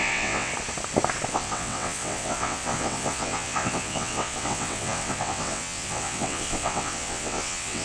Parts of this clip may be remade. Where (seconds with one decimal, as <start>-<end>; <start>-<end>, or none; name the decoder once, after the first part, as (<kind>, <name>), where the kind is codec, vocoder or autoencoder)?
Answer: 0.0-0.5 (vocoder, WaveNeXt); 1.3-7.8